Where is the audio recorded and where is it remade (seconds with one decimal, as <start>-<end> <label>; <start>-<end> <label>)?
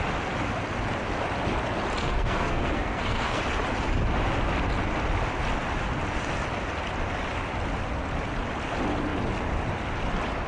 0.0-2.0 recorded; 2.0-3.4 remade; 3.4-10.5 recorded